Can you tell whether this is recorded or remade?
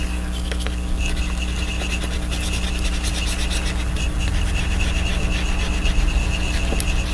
recorded